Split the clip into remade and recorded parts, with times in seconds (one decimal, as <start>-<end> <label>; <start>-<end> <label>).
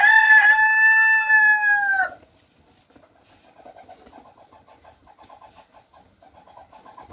0.0-7.1 recorded